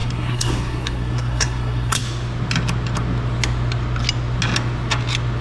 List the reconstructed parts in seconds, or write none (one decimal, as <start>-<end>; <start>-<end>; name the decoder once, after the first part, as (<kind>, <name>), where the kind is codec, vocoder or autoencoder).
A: 0.0-2.0 (codec, SNAC)